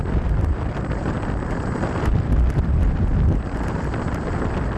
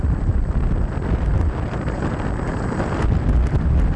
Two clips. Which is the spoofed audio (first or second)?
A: first